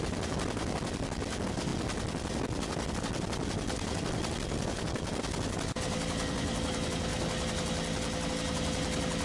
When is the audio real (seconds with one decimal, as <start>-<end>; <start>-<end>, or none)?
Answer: 0.0-9.2

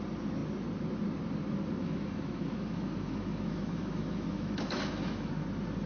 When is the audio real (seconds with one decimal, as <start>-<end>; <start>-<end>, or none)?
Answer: 0.0-1.8; 5.3-5.9